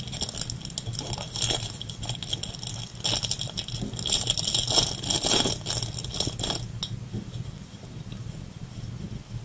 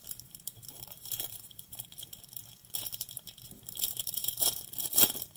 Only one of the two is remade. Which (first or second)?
second